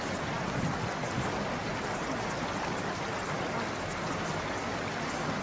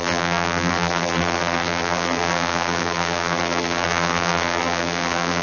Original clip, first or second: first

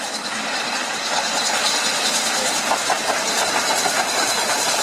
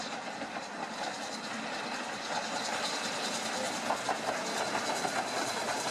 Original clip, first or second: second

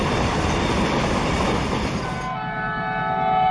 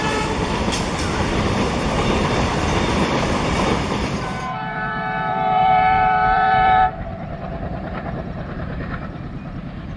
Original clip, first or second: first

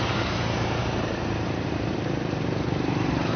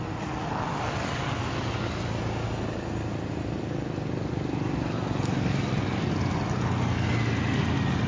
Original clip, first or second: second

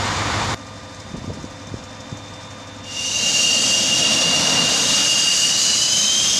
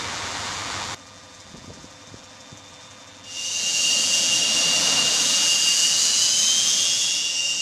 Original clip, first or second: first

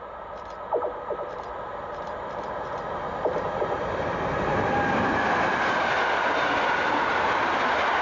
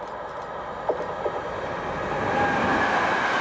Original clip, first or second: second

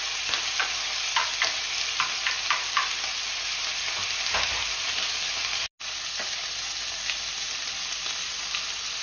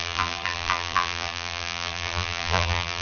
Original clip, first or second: first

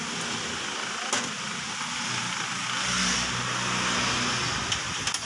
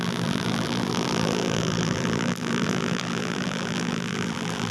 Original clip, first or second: first